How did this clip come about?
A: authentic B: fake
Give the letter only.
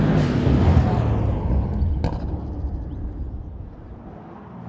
A